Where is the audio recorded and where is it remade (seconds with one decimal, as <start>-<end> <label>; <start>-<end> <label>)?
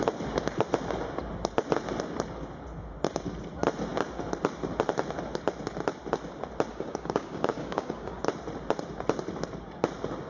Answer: 0.0-6.7 recorded; 6.7-8.2 remade; 8.2-10.3 recorded